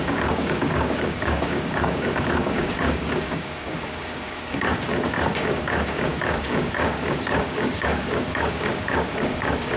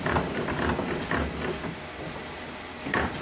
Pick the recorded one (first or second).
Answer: second